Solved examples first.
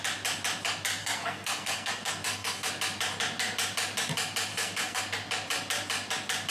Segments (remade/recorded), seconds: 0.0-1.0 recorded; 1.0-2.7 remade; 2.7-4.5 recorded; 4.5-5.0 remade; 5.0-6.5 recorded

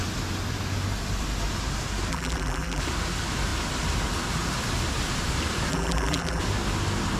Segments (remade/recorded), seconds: 0.0-2.1 recorded; 2.1-2.8 remade; 2.8-5.7 recorded; 5.7-6.4 remade; 6.4-7.2 recorded

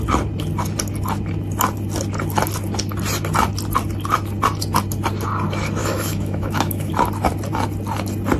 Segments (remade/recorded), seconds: 0.0-5.8 recorded; 5.8-6.9 remade; 6.9-8.4 recorded

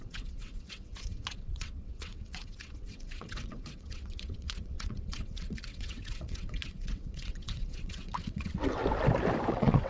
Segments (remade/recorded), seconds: 0.0-8.8 remade; 8.8-9.5 recorded; 9.5-9.9 remade

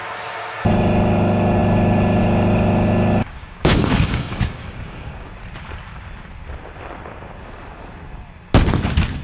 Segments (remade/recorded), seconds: 0.0-3.2 recorded; 3.2-5.3 remade; 5.3-9.2 recorded

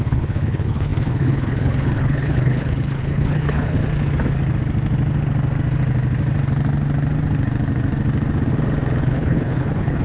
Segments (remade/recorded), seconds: 0.0-3.8 remade; 3.8-9.0 recorded; 9.0-10.0 remade

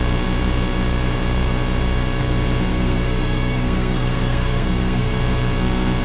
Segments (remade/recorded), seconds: 0.0-2.7 recorded; 2.7-5.2 remade; 5.2-6.0 recorded

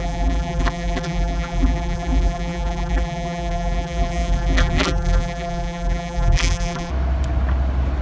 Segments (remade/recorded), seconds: 0.0-6.9 remade; 6.9-8.0 recorded